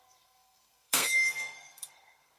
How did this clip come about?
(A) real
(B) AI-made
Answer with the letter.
B